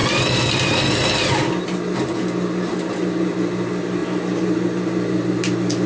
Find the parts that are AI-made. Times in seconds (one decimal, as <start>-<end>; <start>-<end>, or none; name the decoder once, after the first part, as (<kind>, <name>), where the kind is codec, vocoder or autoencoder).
none